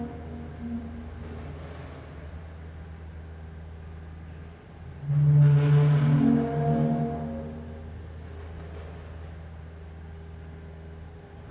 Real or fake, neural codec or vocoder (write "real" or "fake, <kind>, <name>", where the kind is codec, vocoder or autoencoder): real